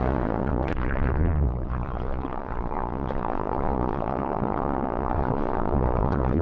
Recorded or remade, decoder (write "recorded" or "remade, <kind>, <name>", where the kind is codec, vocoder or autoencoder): remade, vocoder, Vocos